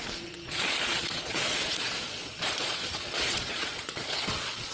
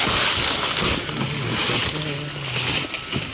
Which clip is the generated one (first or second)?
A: first